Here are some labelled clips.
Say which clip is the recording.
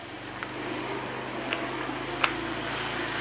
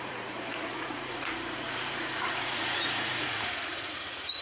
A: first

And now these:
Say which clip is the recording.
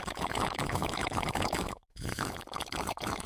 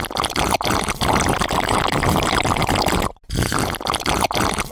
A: second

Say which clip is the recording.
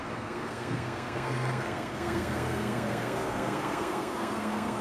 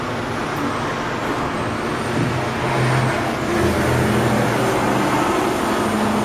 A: second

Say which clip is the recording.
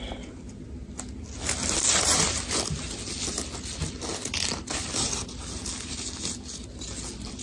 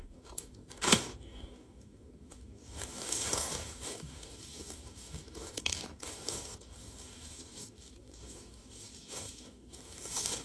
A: first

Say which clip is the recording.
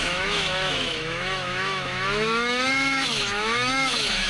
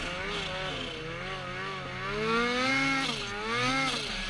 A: second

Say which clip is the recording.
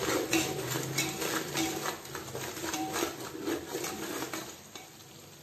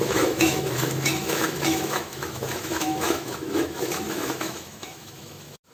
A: first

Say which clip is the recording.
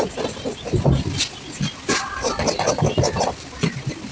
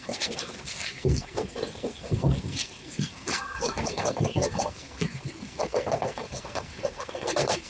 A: first